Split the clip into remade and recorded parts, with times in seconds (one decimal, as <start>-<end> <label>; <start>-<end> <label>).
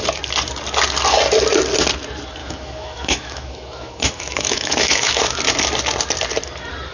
0.0-2.4 recorded; 2.4-5.4 remade; 5.4-6.9 recorded